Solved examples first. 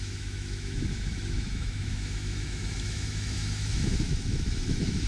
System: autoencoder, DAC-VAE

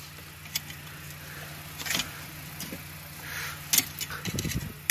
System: none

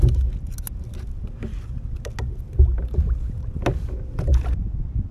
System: none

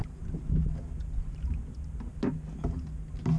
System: none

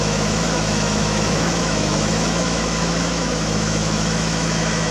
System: autoencoder, DAC-VAE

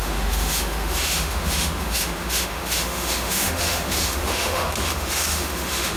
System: autoencoder, DAC-VAE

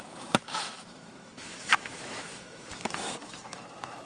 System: autoencoder, DAC-VAE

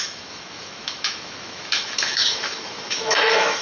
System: autoencoder, DAC-VAE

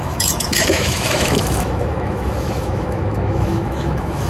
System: autoencoder, DAC-VAE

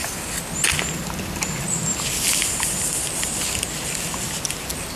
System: none